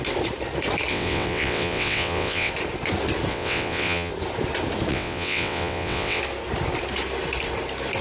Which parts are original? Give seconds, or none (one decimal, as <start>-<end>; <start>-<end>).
0.0-0.9; 2.5-3.3; 4.1-4.9; 6.2-8.0